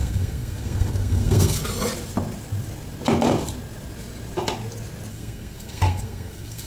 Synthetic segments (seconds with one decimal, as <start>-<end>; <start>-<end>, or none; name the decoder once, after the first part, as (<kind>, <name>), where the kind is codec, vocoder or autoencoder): 0.0-1.6 (codec, SNAC); 5.1-6.7